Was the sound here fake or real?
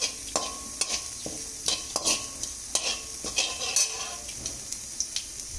real